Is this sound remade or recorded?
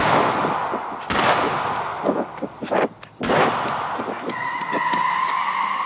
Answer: recorded